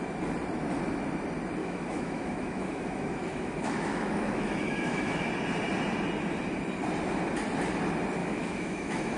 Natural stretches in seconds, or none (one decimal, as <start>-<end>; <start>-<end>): 0.0-1.6; 5.3-8.2